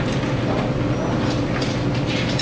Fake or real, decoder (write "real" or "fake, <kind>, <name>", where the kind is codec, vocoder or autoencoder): real